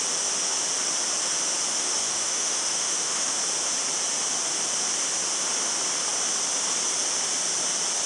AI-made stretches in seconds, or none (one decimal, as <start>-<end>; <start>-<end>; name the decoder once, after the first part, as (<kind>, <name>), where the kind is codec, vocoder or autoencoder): 1.7-3.4 (autoencoder, DAC-VAE)